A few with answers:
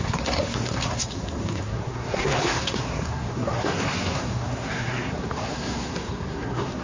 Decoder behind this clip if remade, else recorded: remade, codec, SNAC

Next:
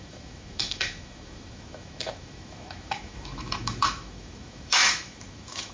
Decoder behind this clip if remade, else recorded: remade, autoencoder, DAC-VAE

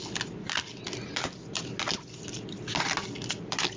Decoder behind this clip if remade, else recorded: recorded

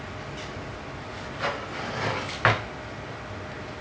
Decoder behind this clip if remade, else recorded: recorded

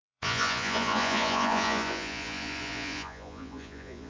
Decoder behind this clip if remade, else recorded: remade, vocoder, Vocos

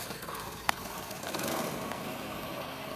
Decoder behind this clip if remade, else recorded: remade, codec, SNAC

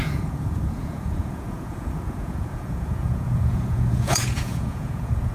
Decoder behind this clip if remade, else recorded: remade, vocoder, Vocos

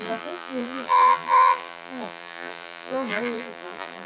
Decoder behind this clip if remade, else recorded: remade, vocoder, BigVGAN v2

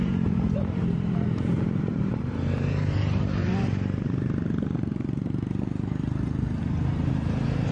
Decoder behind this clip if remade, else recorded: remade, vocoder, BigVGAN v2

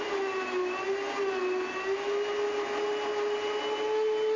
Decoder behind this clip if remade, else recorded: recorded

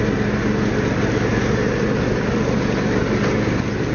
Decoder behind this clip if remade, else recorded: recorded